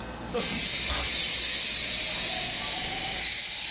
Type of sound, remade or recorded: recorded